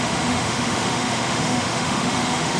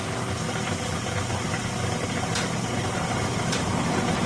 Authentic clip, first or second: second